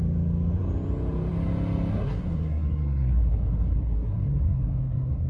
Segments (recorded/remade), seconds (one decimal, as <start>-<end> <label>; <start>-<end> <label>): 0.0-1.9 recorded; 1.9-5.3 remade